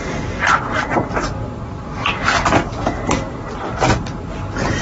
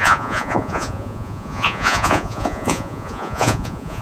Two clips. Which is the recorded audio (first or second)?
first